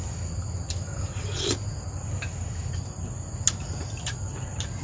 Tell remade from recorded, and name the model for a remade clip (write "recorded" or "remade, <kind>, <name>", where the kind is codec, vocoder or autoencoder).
recorded